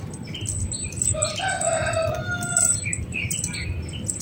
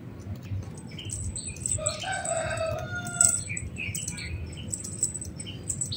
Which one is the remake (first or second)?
first